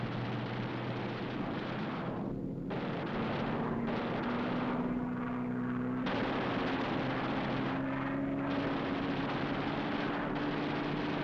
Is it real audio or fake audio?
real